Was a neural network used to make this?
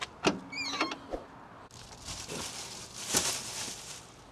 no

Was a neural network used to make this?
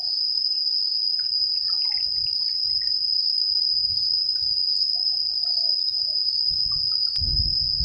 no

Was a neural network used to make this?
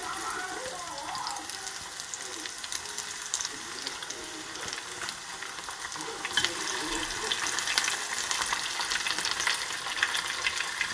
no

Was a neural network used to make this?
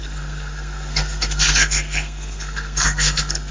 yes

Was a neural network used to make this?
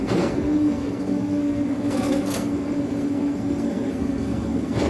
yes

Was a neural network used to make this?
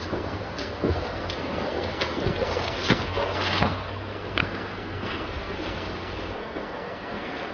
yes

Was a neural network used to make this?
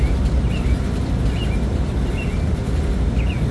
no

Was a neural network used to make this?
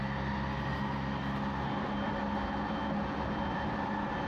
no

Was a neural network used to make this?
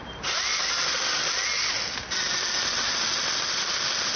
no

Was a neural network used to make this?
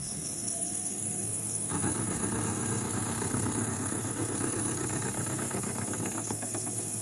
yes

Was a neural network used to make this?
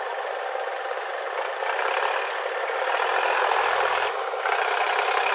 no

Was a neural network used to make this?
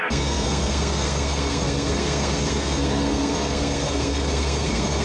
yes